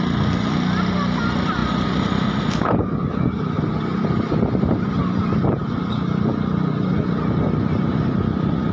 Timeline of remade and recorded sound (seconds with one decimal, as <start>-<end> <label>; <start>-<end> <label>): 0.0-8.7 recorded